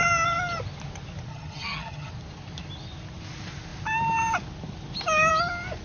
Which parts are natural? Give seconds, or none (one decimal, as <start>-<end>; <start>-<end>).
0.0-1.3; 2.1-5.8